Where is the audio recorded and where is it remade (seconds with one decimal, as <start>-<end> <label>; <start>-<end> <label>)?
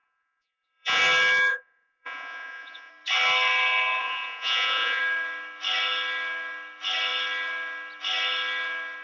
0.0-1.0 remade; 1.0-1.5 recorded; 1.5-2.9 remade; 2.9-4.0 recorded; 4.0-5.0 remade; 5.0-9.0 recorded